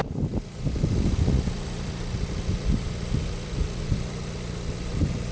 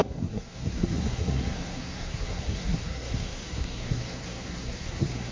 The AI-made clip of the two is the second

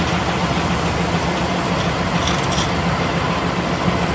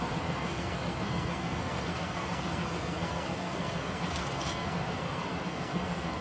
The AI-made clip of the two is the second